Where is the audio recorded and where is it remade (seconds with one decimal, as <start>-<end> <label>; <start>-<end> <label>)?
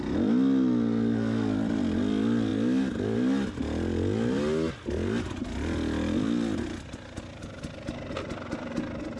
0.0-9.2 recorded